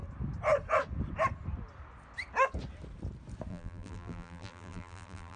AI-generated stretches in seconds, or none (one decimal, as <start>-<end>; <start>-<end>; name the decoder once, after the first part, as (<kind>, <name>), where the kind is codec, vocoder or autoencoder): 3.5-5.4 (vocoder, BigVGAN v2)